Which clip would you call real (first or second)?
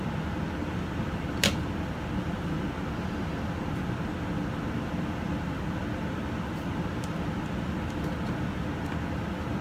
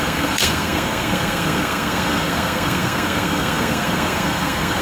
first